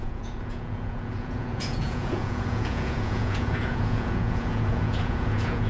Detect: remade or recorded remade